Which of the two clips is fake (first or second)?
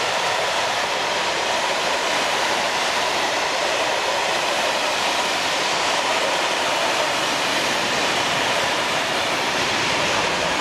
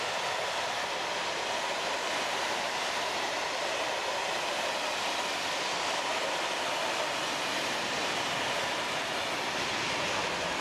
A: first